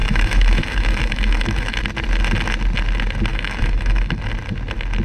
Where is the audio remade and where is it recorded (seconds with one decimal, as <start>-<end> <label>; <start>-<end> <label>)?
0.0-1.8 remade; 1.8-3.3 recorded; 3.3-4.2 remade; 4.2-5.0 recorded